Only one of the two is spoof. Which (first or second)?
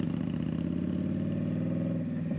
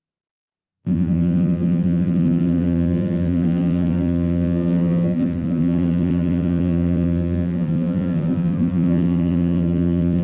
second